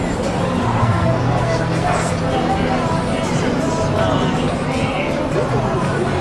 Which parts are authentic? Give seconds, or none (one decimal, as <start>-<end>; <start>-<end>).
0.0-0.8; 2.1-6.2